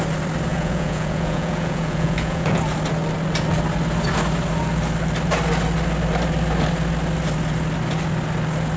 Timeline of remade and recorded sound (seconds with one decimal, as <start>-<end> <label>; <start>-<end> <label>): 0.0-0.5 recorded; 0.5-2.6 remade; 2.6-8.8 recorded